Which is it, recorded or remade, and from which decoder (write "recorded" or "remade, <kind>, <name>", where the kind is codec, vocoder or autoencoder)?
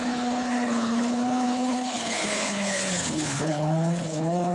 remade, codec, HILCodec